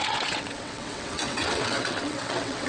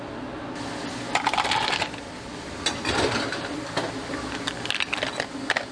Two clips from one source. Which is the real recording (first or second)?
second